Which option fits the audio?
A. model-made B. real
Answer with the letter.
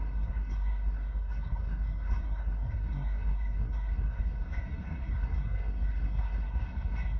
A